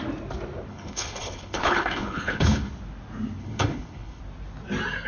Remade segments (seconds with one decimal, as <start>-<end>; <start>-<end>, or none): 0.7-2.7; 3.4-4.2